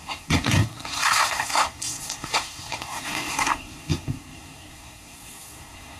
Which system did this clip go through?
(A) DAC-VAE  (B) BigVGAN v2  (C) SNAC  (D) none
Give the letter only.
C